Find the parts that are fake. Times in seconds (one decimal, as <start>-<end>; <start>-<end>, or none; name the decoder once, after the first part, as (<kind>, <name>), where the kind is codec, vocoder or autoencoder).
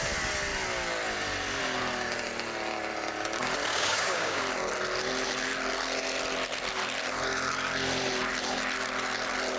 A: 3.7-4.4 (codec, DAC)